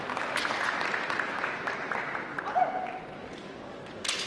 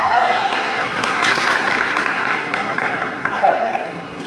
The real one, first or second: first